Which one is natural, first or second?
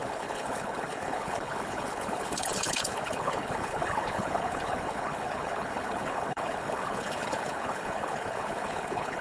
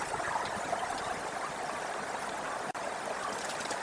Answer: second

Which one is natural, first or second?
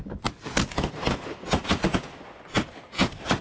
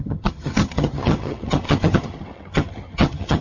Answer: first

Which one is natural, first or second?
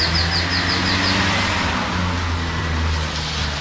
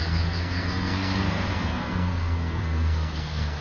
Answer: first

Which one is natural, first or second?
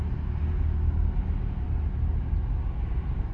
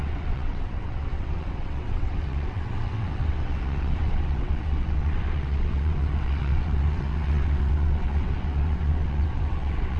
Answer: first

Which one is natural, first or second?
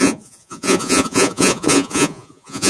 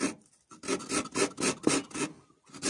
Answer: second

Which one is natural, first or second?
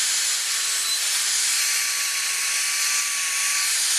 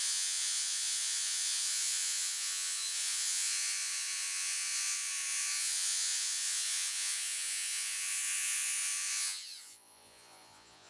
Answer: first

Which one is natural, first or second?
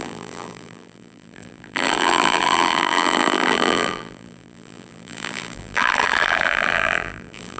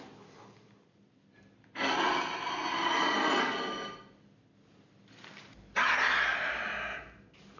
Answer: second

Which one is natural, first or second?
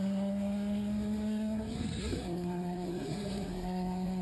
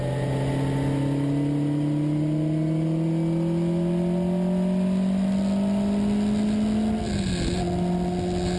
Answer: second